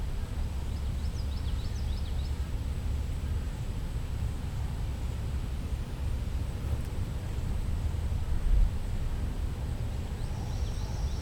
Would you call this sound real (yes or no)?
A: yes